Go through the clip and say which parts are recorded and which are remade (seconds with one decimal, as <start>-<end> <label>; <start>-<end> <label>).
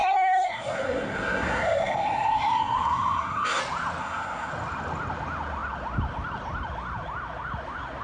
0.0-3.6 remade; 3.6-4.0 recorded; 4.0-4.5 remade; 4.5-8.0 recorded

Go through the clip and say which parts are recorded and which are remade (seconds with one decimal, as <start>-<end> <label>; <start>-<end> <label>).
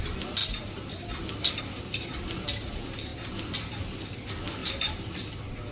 0.0-5.7 recorded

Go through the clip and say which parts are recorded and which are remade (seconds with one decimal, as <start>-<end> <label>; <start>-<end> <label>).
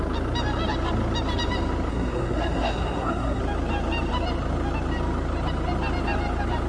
0.0-1.9 recorded; 1.9-3.4 remade; 3.4-6.7 recorded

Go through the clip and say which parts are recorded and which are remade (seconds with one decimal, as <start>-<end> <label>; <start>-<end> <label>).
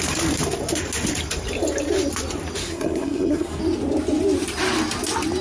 0.0-2.6 recorded; 2.6-3.6 remade; 3.6-5.4 recorded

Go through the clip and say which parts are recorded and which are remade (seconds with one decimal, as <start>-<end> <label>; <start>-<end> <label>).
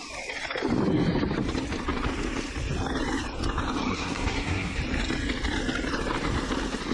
0.0-3.9 recorded; 3.9-4.8 remade; 4.8-6.9 recorded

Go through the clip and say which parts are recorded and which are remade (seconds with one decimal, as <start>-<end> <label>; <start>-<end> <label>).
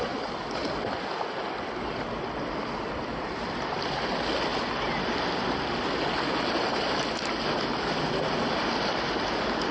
0.0-9.7 recorded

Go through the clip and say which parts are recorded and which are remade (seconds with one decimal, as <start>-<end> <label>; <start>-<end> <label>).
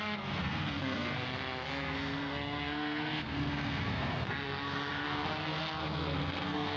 0.0-6.8 remade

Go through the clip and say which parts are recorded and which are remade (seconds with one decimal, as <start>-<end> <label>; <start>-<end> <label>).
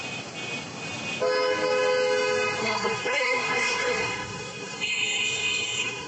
0.0-2.6 recorded; 2.6-6.1 remade